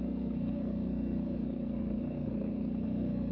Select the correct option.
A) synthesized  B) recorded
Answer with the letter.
A